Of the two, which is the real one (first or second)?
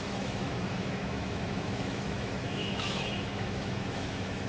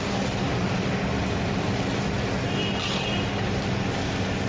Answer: second